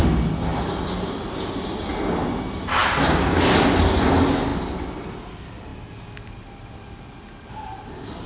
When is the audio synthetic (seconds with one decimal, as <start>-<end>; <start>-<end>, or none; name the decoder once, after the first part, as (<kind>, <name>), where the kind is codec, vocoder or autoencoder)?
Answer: none